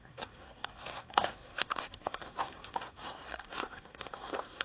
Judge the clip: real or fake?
fake